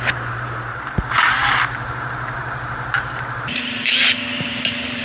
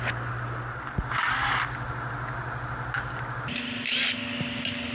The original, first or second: second